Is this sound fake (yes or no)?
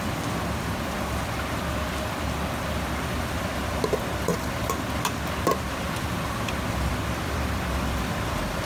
yes